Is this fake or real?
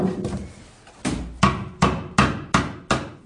real